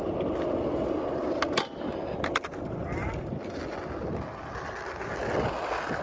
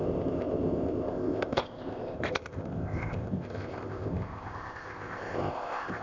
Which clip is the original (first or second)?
first